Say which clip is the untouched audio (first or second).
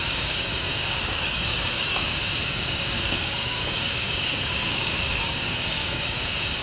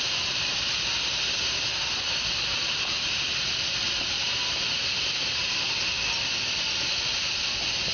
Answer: second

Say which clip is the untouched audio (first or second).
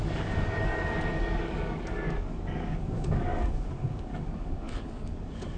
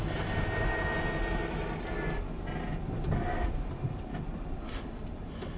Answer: second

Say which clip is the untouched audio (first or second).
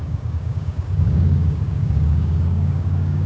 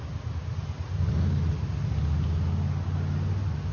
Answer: second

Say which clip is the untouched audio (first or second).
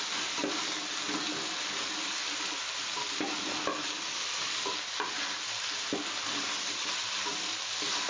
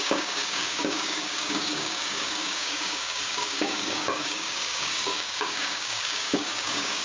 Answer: first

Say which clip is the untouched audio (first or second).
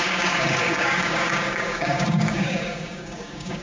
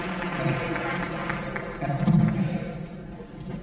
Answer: second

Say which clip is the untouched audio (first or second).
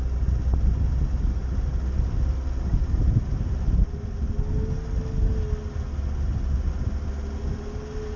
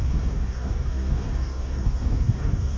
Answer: first